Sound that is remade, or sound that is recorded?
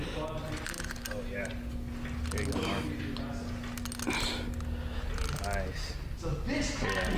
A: recorded